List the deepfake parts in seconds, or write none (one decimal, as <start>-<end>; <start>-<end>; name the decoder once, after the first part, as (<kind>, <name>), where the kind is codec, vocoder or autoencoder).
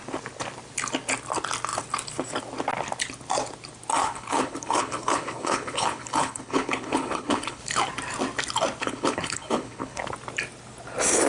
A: 4.0-7.6 (codec, HILCodec); 8.8-10.0